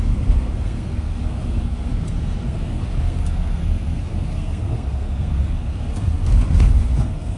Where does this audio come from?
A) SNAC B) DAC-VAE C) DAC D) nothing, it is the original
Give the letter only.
A